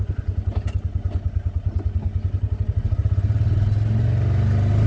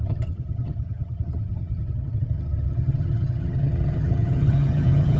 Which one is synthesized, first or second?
second